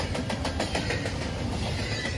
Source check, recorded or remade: recorded